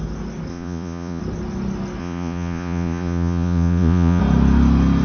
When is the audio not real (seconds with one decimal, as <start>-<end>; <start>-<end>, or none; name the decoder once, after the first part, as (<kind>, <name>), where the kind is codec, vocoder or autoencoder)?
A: 0.5-1.2 (vocoder, Vocos); 2.0-4.2